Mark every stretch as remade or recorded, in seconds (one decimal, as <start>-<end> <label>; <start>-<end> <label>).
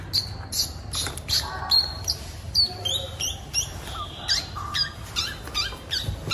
0.0-1.0 recorded; 1.0-4.8 remade; 4.8-6.3 recorded